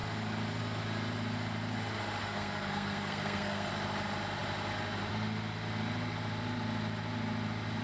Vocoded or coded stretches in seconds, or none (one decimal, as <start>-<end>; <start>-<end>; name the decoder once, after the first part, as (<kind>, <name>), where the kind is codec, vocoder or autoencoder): 2.2-3.7 (codec, SNAC)